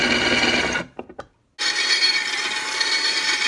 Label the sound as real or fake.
real